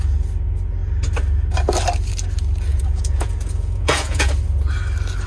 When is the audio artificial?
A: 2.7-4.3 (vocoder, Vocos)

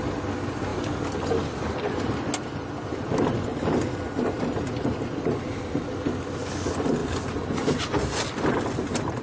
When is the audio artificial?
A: none

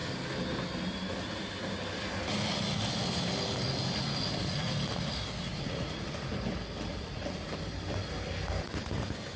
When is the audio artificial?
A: 5.5-6.1 (vocoder, Vocos); 6.9-7.5

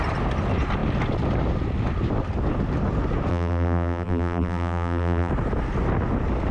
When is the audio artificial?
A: 3.3-5.3 (vocoder, BigVGAN v2)

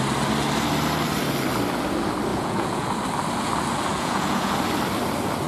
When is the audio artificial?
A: 2.3-2.9 (vocoder, Vocos); 3.9-4.5

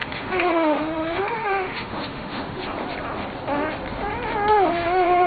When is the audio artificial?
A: 0.0-2.6 (autoencoder, DAC-VAE); 4.5-5.3